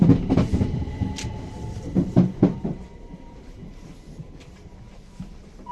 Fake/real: fake